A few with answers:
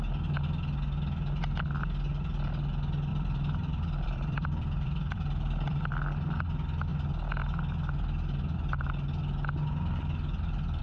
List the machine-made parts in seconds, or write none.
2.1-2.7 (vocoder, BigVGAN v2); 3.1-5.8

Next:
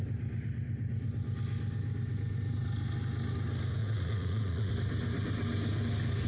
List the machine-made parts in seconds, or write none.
3.8-4.7 (vocoder, Vocos)